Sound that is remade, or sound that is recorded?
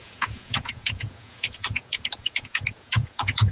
remade